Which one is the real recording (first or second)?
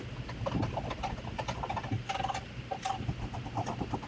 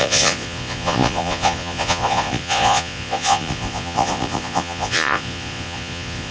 first